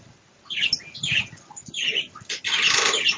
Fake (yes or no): no